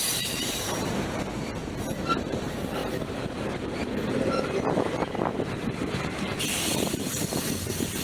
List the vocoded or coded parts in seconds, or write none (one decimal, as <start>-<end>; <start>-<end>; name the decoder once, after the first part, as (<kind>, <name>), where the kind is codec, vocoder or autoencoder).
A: 0.0-1.6 (vocoder, BigVGAN v2); 2.2-2.8; 3.3-3.8; 5.6-8.0